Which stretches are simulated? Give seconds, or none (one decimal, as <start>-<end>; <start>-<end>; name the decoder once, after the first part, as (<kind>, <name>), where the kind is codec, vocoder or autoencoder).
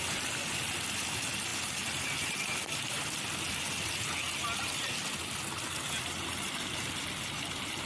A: none